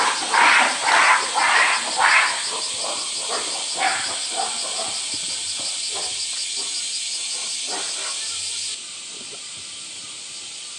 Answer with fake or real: real